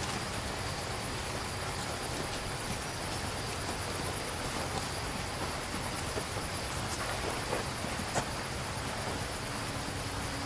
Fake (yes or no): no